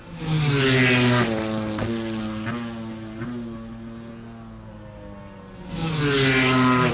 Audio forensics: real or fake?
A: real